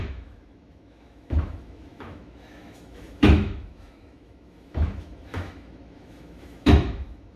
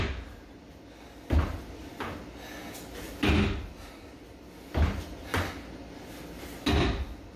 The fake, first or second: first